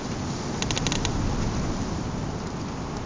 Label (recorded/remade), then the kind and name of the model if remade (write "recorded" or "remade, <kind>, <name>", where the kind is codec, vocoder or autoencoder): recorded